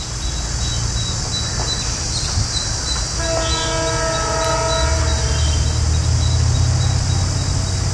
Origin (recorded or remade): recorded